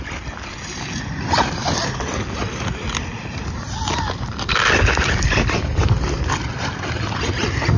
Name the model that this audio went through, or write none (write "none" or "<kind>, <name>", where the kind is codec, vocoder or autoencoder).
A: none